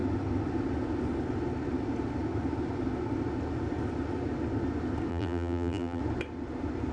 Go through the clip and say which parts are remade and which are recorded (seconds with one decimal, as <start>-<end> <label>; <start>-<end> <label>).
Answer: 0.0-5.1 recorded; 5.1-6.0 remade; 6.0-6.9 recorded